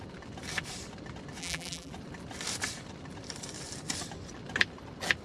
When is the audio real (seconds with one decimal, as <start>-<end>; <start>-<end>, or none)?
0.0-1.4; 1.9-5.2